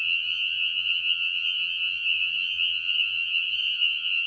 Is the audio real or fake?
fake